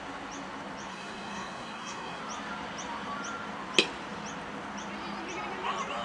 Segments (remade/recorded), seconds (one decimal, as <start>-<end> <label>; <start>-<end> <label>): 0.0-0.9 recorded; 0.9-2.2 remade; 2.2-6.0 recorded